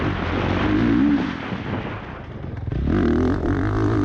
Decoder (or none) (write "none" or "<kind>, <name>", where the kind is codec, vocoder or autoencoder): none